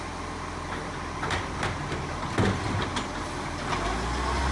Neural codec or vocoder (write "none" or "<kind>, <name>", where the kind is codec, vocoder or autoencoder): none